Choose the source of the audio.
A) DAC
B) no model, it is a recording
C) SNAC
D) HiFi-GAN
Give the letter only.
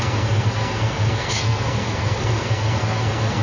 C